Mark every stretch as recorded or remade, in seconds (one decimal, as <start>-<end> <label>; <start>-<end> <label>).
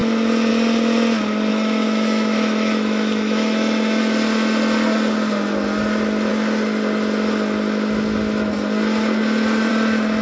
0.0-1.5 recorded; 1.5-4.0 remade; 4.0-10.2 recorded